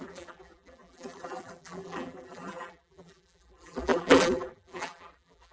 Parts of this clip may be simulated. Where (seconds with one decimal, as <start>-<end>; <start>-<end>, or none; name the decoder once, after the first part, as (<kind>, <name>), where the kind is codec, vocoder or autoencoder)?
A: 0.0-5.5 (vocoder, BigVGAN v2)